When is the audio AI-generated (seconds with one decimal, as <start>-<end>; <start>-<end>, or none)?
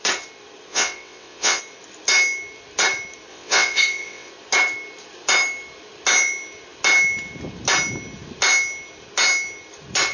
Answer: 0.7-1.6; 3.3-4.3